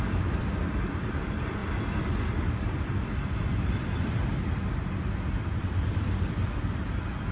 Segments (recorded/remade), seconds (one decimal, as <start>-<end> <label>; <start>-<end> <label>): 0.0-1.6 remade; 1.6-2.5 recorded; 2.5-7.3 remade